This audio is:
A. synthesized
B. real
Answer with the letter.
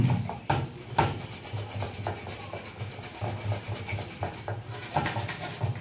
B